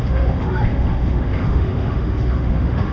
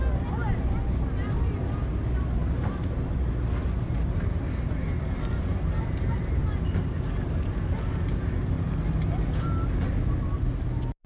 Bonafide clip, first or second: second